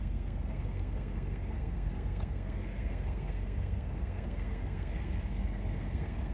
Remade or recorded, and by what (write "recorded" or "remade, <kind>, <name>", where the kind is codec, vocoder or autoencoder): remade, codec, SNAC